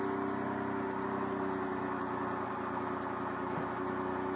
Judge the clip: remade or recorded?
recorded